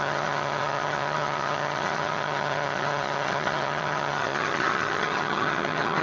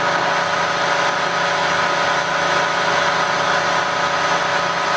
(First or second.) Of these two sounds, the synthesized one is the first